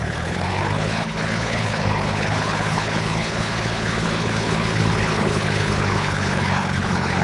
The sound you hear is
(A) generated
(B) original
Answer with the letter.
A